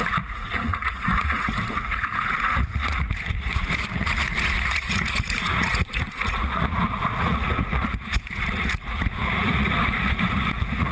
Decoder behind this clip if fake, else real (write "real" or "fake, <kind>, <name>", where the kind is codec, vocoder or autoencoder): fake, vocoder, Vocos